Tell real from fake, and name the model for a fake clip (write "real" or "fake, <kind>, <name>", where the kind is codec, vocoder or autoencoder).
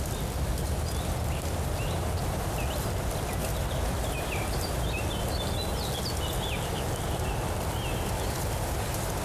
real